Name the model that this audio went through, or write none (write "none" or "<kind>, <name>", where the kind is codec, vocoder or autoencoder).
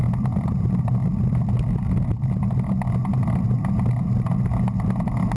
none